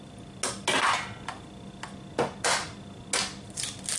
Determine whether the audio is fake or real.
real